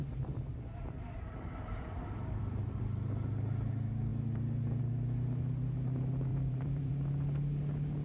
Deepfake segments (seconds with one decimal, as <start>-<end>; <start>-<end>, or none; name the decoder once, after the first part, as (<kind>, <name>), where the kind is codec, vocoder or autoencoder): 0.0-2.8 (vocoder, BigVGAN v2); 6.3-6.9